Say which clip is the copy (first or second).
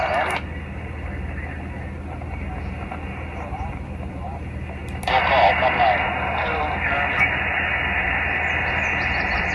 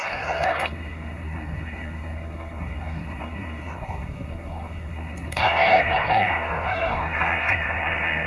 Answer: second